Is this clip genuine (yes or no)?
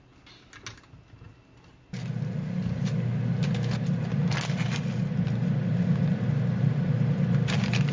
yes